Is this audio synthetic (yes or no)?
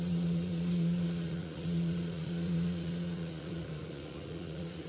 yes